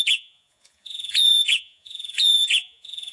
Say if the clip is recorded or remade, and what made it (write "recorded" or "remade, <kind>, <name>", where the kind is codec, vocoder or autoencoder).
remade, vocoder, Vocos